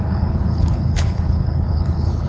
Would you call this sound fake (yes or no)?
yes